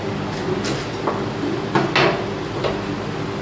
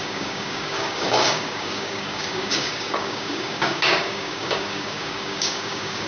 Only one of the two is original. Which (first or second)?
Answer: first